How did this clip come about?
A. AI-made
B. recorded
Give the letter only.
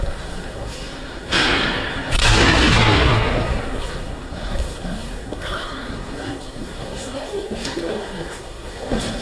A